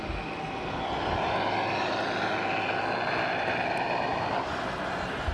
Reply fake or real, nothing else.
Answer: real